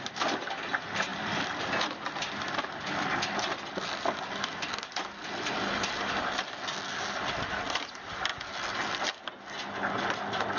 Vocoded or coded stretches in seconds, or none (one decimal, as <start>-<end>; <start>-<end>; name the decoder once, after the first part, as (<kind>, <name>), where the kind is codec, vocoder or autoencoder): none